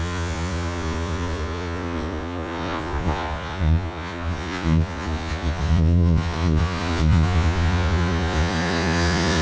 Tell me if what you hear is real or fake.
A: fake